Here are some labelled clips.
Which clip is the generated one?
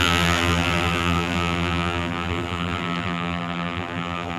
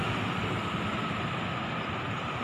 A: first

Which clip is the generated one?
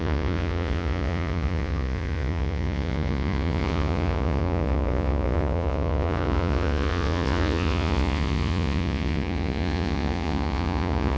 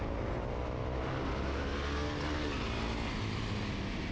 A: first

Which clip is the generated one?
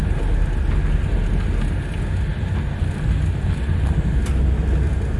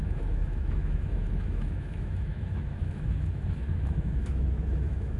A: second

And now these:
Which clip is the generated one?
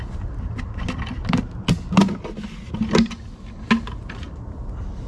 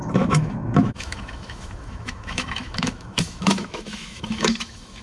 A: second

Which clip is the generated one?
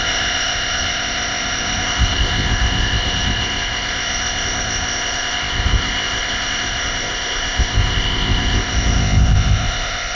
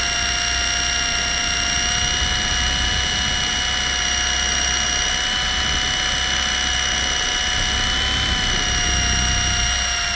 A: first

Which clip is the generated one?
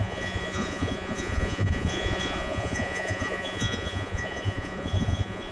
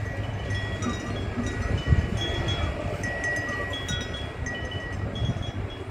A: first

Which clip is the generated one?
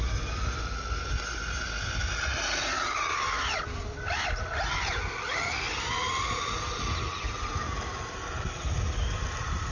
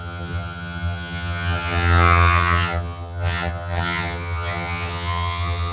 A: second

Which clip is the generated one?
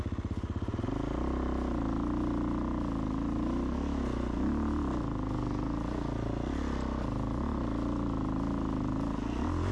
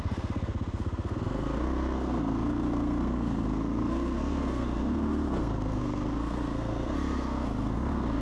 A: second